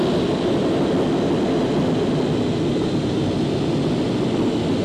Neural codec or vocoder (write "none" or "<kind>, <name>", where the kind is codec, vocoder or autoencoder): none